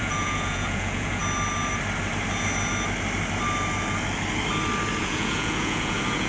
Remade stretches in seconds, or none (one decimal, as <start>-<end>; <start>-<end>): 0.0-1.2; 5.0-6.3